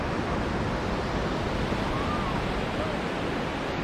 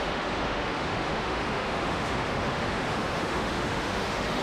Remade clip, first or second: second